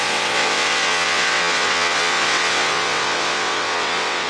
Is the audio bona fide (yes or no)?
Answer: no